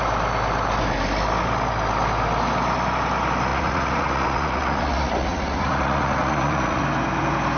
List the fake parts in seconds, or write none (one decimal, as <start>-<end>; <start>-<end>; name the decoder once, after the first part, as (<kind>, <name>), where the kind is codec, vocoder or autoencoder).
3.5-6.8 (vocoder, Vocos)